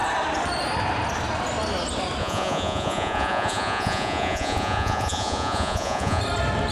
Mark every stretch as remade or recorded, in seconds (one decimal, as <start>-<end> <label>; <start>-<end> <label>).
0.0-2.2 recorded; 2.2-6.2 remade; 6.2-6.7 recorded